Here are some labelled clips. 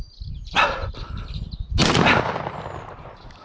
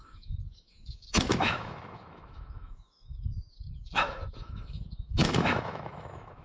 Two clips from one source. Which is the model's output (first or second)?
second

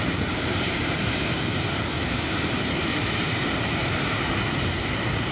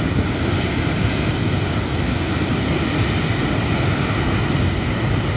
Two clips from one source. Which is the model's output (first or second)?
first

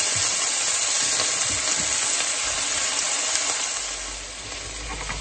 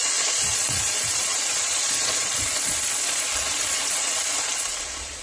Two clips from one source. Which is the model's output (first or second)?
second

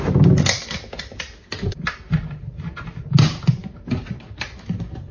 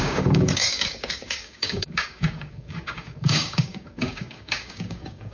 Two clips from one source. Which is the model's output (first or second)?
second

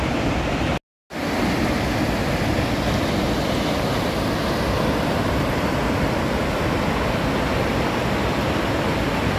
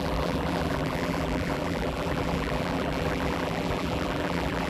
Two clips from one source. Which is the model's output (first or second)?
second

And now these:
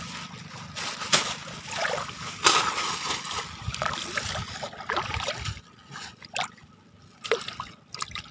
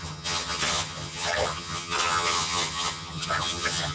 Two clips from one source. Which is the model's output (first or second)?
second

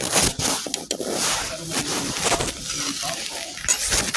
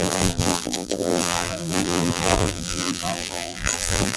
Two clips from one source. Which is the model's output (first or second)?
second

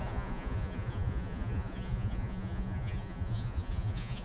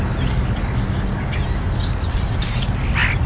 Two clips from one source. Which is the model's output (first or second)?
first